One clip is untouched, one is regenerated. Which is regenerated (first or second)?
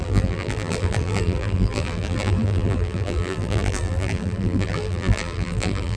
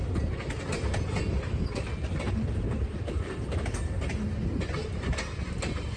first